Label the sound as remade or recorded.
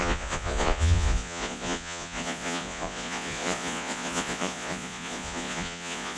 remade